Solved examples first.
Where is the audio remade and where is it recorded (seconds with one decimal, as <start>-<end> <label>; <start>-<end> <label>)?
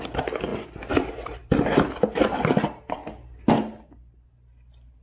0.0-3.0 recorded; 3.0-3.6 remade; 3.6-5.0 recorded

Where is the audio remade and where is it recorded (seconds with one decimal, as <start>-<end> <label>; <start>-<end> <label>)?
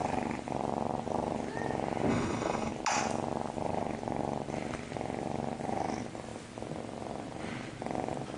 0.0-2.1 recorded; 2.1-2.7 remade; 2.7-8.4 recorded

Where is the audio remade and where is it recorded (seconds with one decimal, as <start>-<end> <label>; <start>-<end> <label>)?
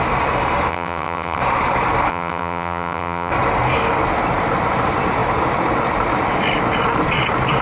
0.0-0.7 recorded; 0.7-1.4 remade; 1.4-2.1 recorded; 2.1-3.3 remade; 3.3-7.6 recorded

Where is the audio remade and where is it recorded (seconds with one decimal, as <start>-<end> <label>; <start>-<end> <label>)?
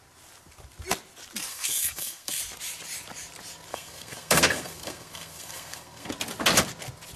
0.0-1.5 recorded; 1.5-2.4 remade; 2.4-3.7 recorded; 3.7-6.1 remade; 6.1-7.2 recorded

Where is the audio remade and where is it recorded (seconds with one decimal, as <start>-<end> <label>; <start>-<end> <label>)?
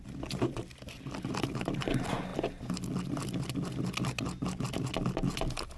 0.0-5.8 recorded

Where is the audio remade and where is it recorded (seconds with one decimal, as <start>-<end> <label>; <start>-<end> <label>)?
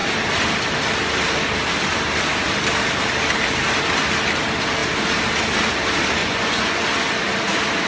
0.0-6.2 recorded; 6.2-6.8 remade; 6.8-7.9 recorded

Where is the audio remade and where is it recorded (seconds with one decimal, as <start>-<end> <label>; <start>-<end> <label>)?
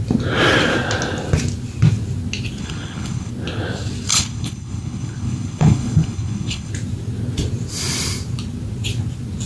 0.0-2.6 recorded; 2.6-3.3 remade; 3.3-4.1 recorded; 4.1-6.7 remade; 6.7-9.5 recorded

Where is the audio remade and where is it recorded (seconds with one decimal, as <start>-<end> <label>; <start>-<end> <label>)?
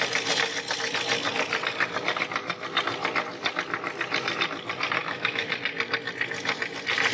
0.0-5.0 recorded; 5.0-5.5 remade; 5.5-7.1 recorded